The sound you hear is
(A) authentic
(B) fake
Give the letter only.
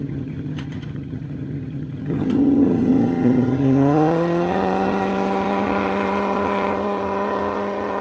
B